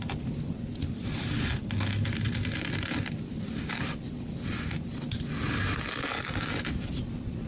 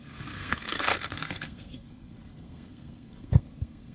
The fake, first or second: second